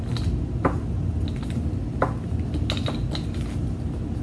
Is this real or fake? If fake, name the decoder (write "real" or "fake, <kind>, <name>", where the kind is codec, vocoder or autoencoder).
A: real